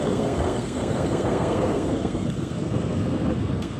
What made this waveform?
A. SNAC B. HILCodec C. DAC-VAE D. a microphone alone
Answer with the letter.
A